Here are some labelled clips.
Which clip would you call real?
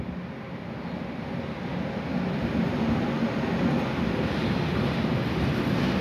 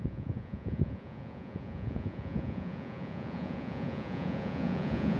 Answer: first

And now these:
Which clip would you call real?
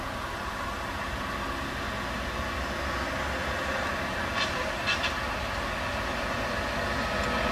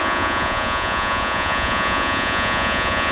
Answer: first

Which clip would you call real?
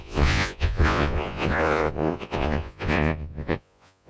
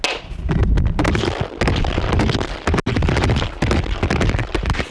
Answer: second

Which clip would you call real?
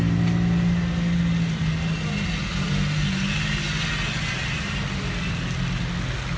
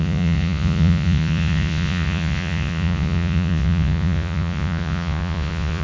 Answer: first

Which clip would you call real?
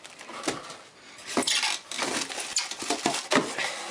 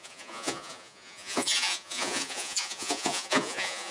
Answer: first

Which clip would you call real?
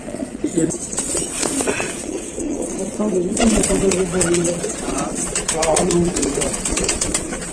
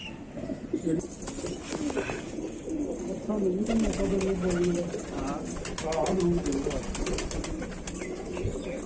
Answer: second